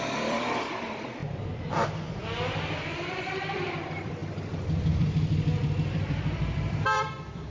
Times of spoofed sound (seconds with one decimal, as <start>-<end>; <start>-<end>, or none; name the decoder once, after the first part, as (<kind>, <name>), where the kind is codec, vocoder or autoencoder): 0.0-1.2 (vocoder, BigVGAN v2); 3.1-4.2; 5.0-7.5